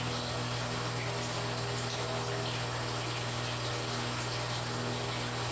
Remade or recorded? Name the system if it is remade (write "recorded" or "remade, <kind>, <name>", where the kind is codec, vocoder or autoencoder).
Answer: recorded